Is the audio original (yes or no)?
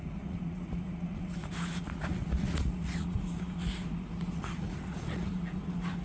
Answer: no